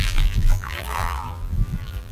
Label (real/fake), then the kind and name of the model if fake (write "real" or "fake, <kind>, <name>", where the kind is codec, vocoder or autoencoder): fake, vocoder, BigVGAN v2